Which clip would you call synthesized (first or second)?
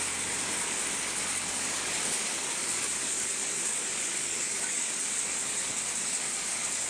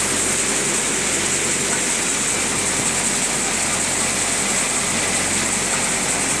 first